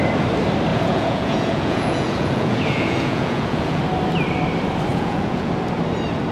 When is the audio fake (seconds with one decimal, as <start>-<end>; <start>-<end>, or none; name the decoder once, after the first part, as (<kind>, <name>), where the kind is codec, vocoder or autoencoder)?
0.7-3.8 (vocoder, Vocos); 4.9-5.5